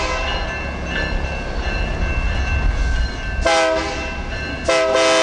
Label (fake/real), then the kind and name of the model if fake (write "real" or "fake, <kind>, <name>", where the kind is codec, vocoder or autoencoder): real